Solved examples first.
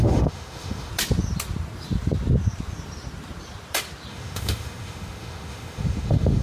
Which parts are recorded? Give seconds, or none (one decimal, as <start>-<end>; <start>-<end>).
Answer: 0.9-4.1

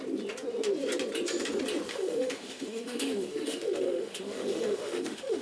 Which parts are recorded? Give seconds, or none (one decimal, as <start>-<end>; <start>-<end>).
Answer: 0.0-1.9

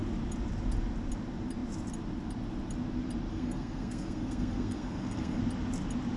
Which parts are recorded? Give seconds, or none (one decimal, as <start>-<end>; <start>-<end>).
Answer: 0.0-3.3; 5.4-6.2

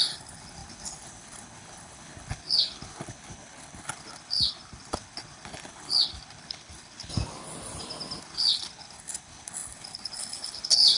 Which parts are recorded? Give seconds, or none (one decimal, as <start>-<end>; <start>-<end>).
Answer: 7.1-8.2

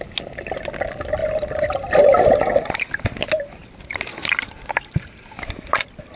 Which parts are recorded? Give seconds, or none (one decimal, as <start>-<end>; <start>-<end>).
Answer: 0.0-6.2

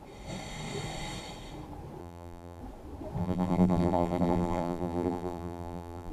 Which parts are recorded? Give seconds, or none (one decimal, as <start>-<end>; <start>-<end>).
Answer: 0.0-2.0; 2.6-3.2

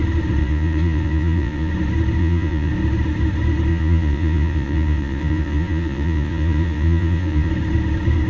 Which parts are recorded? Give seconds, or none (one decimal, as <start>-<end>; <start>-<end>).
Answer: 0.0-0.4; 1.7-2.2; 2.7-3.7; 7.5-8.3